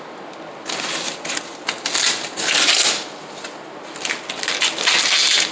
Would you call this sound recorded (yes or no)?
yes